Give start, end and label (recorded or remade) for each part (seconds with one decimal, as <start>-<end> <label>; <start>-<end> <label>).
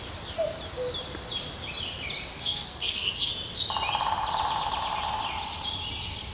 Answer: 0.0-2.3 recorded; 2.3-3.3 remade; 3.3-6.3 recorded